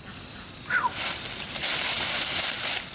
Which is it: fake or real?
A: real